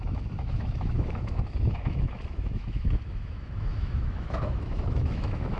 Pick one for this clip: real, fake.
fake